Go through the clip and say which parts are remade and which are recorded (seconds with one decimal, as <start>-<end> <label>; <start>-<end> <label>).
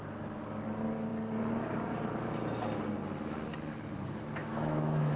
0.0-4.4 recorded; 4.4-5.2 remade